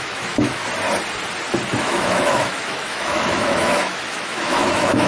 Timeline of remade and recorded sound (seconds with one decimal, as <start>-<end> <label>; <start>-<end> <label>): 0.0-0.6 remade; 0.6-1.8 recorded; 1.8-5.1 remade